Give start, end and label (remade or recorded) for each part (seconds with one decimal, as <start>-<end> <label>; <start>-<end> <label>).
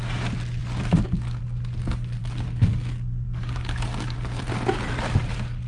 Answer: 0.0-0.6 recorded; 0.6-1.4 remade; 1.4-2.2 recorded; 2.2-4.4 remade; 4.4-5.7 recorded